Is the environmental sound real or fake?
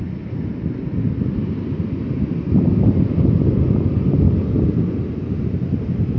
real